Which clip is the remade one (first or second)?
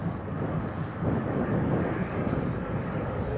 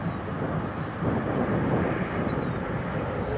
first